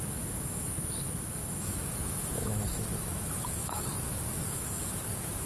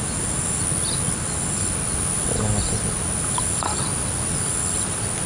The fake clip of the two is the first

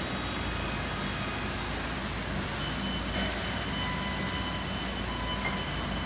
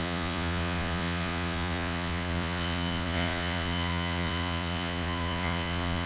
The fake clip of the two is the second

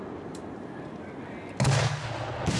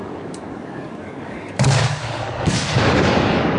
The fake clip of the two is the second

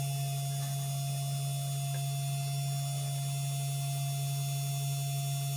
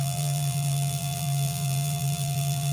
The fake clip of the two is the second